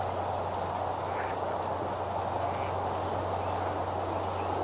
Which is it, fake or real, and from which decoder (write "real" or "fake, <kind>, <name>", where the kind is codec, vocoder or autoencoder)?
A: real